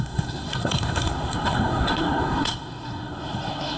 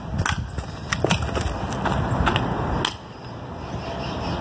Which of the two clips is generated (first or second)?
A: first